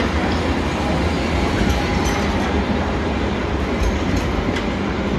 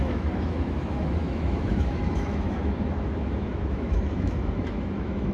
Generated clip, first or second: second